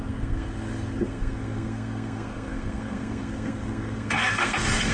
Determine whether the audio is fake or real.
fake